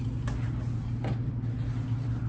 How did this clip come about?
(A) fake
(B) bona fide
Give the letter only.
B